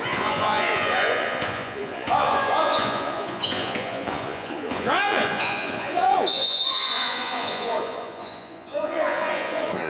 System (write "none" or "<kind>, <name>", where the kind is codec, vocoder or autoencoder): vocoder, Vocos